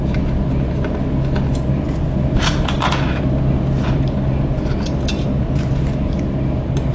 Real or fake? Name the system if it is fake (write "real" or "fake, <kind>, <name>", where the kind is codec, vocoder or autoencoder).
real